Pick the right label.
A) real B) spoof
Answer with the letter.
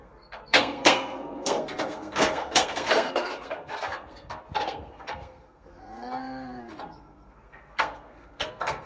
B